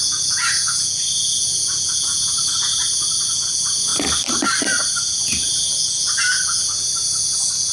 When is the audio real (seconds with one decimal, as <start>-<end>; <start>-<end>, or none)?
3.9-4.8